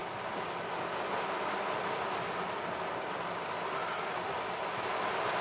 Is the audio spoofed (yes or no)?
no